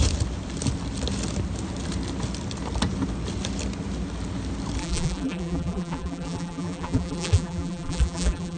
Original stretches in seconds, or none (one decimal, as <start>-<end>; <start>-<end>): 0.0-4.8